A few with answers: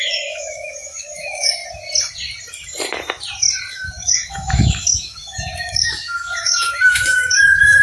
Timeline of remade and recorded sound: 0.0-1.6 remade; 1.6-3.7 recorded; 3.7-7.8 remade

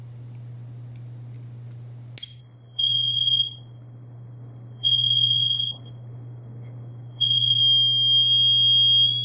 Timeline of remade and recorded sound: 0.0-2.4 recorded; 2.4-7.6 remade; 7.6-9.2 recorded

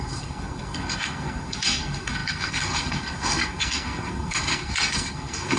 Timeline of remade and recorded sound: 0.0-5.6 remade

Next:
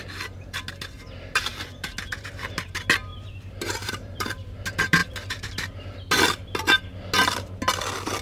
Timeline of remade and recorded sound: 0.0-3.1 recorded; 3.1-4.5 remade; 4.5-8.2 recorded

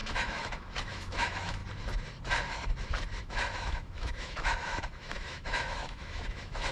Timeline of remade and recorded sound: 0.0-1.6 remade; 1.6-3.2 recorded; 3.2-6.7 remade

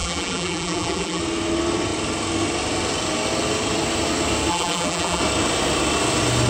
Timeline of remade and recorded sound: 0.0-1.2 remade; 1.2-4.5 recorded; 4.5-5.2 remade; 5.2-6.5 recorded